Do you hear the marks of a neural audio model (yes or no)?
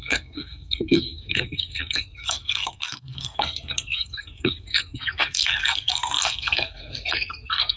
yes